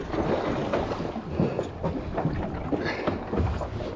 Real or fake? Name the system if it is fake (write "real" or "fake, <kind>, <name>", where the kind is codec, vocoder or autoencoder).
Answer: real